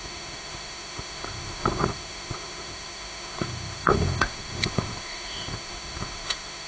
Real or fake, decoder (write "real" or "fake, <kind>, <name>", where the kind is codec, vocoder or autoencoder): fake, autoencoder, DAC-VAE